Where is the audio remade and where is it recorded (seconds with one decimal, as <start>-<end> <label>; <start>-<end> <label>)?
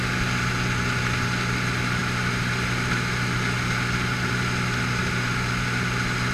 0.0-6.3 recorded